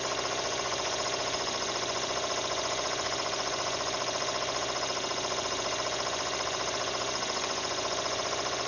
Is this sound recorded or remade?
remade